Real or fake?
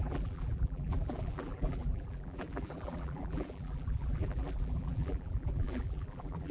fake